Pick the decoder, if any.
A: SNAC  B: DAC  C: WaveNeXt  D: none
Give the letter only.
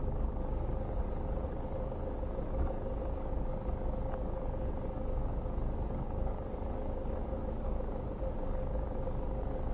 B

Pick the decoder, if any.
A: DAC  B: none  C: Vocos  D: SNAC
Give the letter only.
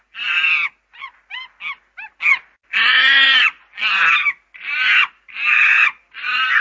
B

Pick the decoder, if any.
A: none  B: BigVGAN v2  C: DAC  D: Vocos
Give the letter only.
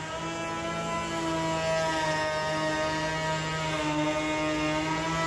A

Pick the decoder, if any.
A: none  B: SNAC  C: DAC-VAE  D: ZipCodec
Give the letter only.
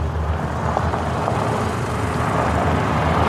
A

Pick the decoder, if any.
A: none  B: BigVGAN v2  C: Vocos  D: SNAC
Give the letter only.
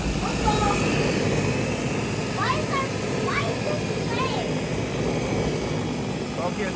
A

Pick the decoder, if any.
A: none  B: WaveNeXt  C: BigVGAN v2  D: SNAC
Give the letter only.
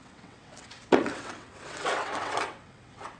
B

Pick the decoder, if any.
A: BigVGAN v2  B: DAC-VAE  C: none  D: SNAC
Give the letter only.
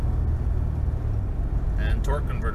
C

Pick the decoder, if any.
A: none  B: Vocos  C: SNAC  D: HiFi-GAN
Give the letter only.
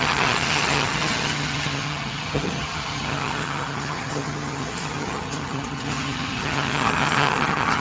D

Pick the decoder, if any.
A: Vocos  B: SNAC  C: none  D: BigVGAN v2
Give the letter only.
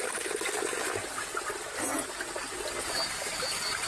C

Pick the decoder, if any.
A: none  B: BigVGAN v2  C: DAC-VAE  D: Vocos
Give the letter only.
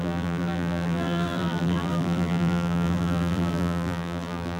B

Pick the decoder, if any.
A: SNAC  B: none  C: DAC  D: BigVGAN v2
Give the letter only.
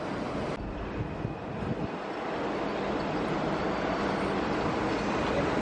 B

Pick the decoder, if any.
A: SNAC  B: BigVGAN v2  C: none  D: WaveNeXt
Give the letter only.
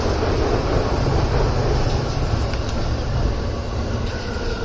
B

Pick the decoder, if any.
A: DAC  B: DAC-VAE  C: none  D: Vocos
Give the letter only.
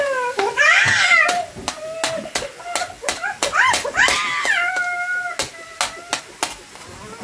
C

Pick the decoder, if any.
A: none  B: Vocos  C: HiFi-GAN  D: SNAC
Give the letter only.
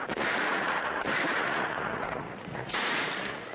B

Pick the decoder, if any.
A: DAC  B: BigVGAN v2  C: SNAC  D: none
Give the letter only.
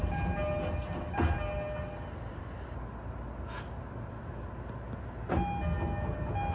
D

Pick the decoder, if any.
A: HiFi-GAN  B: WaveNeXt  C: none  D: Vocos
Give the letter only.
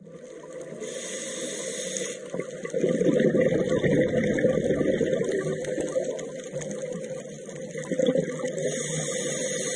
C